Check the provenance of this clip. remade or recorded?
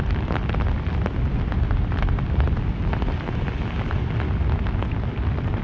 recorded